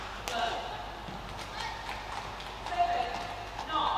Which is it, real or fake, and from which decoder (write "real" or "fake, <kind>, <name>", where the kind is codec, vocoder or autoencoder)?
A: real